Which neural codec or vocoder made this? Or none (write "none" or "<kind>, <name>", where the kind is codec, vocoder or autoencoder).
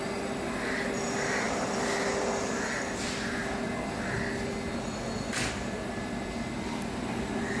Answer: none